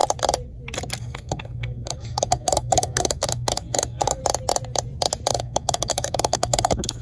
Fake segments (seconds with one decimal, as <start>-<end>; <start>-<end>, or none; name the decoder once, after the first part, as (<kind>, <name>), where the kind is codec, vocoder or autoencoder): 1.0-4.2 (codec, SNAC); 5.3-7.0